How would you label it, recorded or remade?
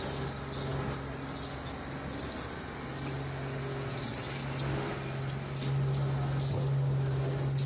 recorded